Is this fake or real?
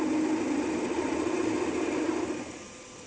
real